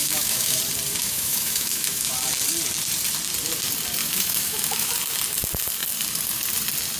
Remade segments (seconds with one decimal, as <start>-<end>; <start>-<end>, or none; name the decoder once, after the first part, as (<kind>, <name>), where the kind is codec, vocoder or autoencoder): 0.0-0.6 (autoencoder, DAC-VAE); 1.0-2.1; 4.0-4.9

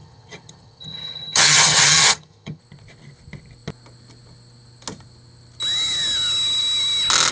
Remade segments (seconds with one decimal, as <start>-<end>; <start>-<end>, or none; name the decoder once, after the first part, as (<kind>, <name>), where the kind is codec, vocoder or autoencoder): 0.0-2.6 (vocoder, HiFi-GAN)

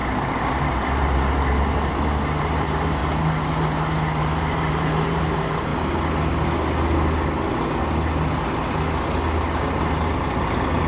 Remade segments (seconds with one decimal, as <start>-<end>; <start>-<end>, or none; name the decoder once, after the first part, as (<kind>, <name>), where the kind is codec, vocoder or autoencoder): 2.4-3.0 (vocoder, BigVGAN v2); 4.2-5.7

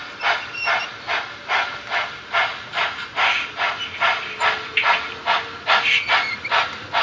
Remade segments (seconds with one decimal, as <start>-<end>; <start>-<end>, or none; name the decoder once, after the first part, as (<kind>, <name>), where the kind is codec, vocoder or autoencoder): none